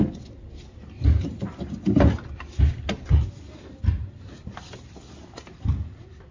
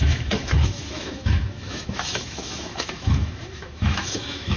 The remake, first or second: second